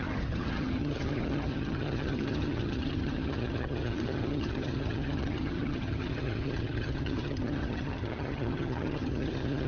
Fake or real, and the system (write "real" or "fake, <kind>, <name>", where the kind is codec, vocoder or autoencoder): fake, vocoder, HiFi-GAN